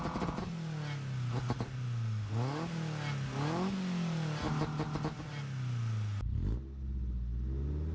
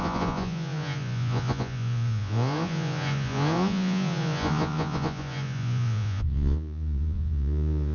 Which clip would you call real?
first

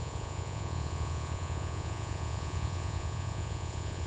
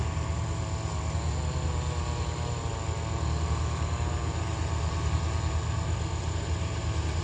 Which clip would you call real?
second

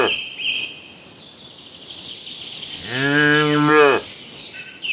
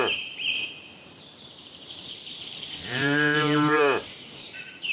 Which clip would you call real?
first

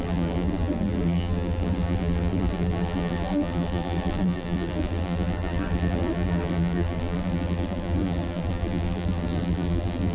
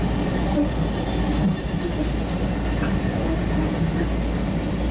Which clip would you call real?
second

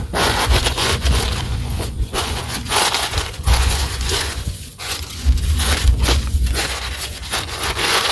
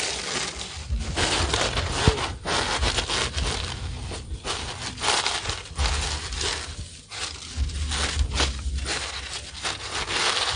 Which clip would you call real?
second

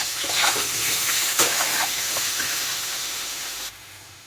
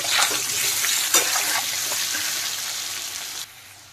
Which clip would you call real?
second